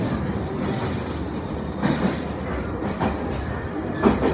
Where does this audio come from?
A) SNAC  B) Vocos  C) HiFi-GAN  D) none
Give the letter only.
D